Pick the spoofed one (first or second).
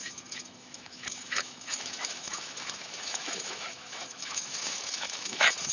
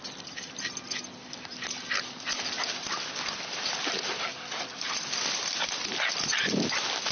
first